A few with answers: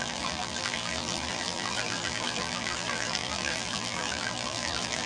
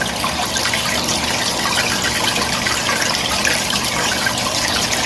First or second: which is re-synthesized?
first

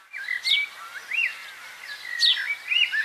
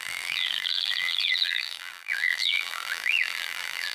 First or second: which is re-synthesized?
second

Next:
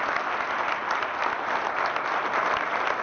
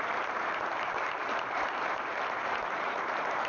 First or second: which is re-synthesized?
second